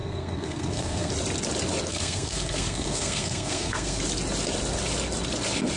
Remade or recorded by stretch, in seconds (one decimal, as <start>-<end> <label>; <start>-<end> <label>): 0.0-1.1 remade; 1.1-1.9 recorded; 1.9-4.0 remade; 4.0-5.8 recorded